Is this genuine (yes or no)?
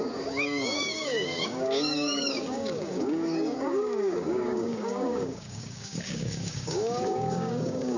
no